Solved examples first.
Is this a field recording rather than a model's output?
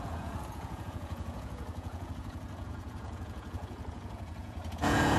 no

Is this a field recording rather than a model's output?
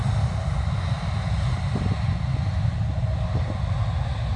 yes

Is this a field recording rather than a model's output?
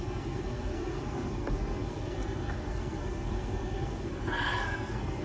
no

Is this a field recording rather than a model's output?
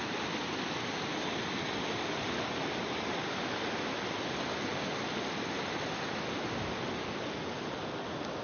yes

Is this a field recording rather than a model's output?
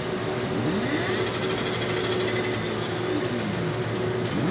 yes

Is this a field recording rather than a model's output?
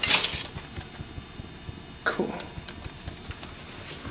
yes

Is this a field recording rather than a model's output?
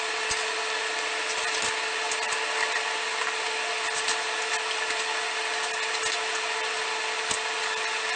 yes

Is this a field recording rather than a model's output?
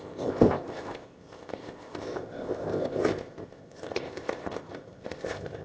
no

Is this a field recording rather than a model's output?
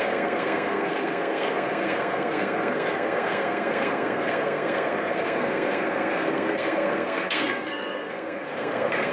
no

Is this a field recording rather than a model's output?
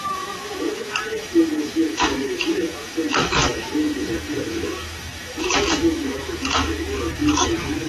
no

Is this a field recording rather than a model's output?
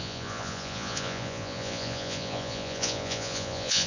no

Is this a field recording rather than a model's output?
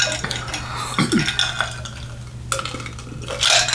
yes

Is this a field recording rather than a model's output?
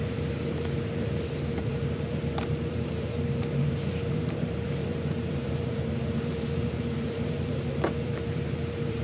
no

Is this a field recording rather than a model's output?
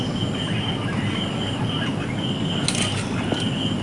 yes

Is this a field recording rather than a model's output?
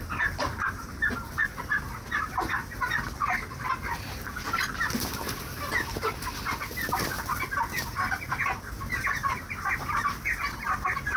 yes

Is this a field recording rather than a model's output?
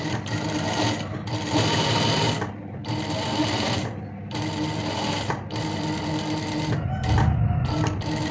yes